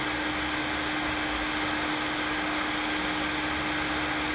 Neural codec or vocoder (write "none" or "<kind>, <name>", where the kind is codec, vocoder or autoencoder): none